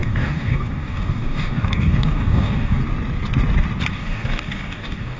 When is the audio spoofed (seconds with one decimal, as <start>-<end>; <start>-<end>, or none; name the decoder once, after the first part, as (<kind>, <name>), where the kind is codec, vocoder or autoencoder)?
0.0-2.8 (codec, DAC); 3.9-5.2